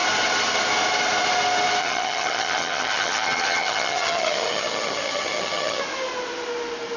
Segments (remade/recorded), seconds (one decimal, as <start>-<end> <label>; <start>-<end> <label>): 0.0-1.8 recorded; 1.8-5.8 remade; 5.8-7.0 recorded